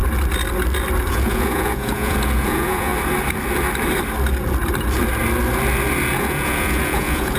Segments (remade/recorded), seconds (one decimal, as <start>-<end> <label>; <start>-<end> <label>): 0.0-1.1 recorded; 1.1-2.9 remade; 2.9-6.2 recorded; 6.2-7.4 remade